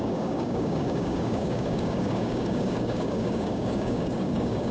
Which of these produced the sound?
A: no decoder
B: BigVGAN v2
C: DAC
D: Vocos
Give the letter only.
C